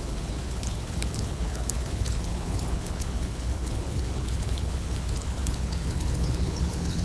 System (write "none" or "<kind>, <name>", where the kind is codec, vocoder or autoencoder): codec, HILCodec